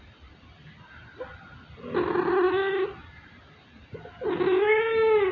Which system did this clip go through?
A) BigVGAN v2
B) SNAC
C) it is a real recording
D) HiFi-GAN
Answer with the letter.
C